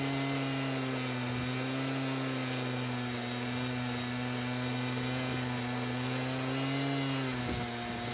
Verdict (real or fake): real